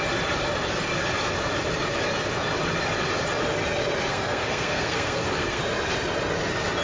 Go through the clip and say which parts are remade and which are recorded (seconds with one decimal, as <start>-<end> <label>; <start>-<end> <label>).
0.0-4.1 recorded; 4.1-5.6 remade; 5.6-6.8 recorded